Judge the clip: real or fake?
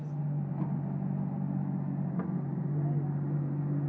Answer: real